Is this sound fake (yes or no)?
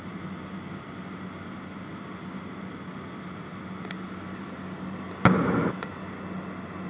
no